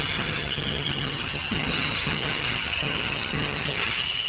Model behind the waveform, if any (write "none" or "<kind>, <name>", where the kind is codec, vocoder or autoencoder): vocoder, HiFi-GAN